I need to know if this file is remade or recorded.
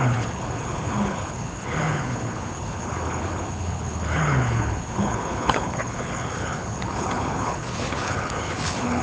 remade